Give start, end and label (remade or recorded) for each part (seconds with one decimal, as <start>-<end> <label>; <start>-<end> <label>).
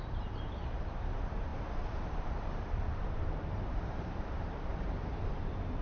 0.0-5.8 remade